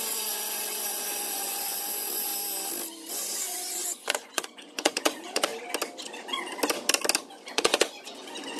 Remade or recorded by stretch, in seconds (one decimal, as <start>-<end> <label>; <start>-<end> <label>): 0.0-2.3 remade; 2.3-3.1 recorded; 3.1-5.5 remade; 5.5-7.2 recorded; 7.2-8.6 remade